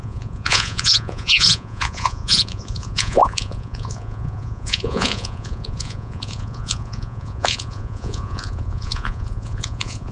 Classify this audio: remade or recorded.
remade